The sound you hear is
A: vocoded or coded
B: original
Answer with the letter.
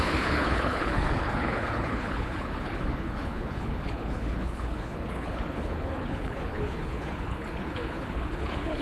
A